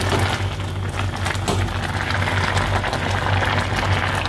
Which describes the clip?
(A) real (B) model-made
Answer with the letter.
A